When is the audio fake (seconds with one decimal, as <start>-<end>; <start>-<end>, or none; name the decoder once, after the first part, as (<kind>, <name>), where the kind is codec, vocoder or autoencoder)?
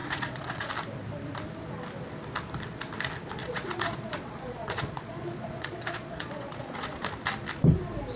0.0-0.7 (vocoder, Vocos); 3.4-7.1